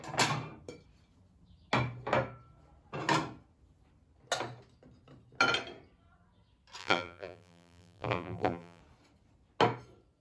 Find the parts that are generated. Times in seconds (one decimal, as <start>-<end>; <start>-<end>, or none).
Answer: 6.8-8.8